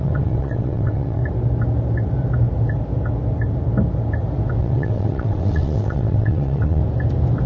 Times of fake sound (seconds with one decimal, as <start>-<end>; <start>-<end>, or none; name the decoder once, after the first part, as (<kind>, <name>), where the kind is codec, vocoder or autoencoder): 0.0-1.2 (vocoder, WaveNeXt); 4.6-6.8